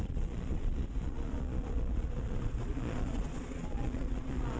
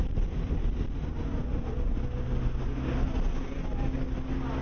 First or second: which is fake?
first